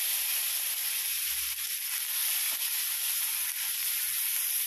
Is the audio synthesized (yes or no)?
no